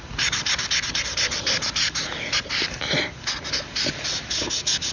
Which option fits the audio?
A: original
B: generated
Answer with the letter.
A